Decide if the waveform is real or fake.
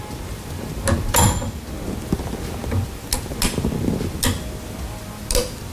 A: real